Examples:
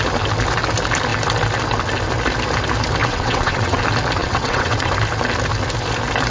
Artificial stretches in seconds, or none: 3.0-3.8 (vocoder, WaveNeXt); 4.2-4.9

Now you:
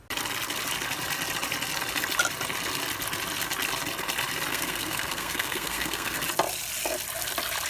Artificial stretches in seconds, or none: 4.5-6.2 (codec, SNAC)

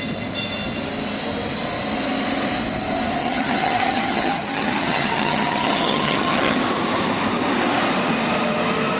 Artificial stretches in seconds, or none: 3.2-6.6 (vocoder, HiFi-GAN)

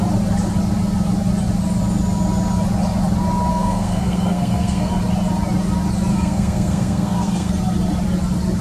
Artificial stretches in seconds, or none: 3.5-4.9 (codec, SNAC); 6.1-7.5

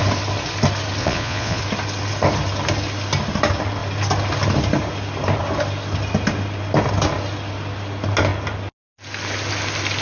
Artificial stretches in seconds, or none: 1.0-1.6 (vocoder, Vocos)

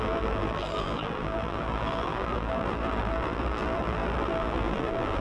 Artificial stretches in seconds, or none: 0.0-5.2 (vocoder, BigVGAN v2)